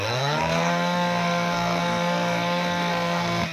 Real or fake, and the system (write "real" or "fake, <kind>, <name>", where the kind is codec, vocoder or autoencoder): fake, codec, SNAC